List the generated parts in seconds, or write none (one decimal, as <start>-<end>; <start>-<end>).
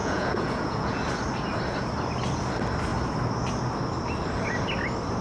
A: 0.0-1.0